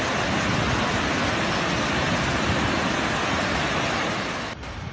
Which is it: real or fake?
real